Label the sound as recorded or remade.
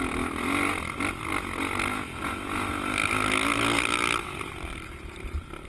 recorded